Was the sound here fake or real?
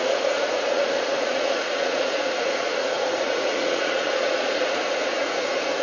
fake